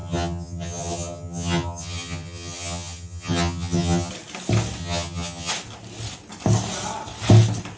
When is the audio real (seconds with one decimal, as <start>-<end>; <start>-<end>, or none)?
4.1-4.8; 5.5-7.8